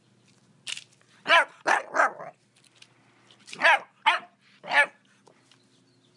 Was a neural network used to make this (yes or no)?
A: no